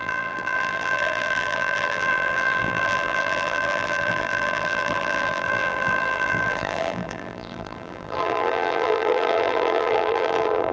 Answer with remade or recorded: remade